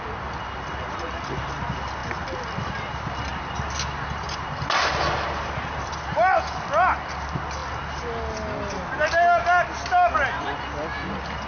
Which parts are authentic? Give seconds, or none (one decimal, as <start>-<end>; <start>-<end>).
0.0-11.5